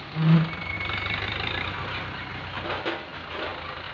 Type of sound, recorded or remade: recorded